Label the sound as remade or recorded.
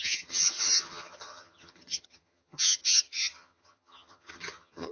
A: remade